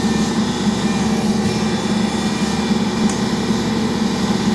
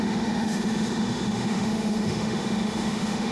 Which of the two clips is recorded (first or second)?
first